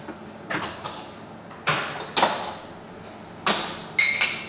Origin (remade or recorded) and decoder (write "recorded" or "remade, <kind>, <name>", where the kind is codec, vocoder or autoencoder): recorded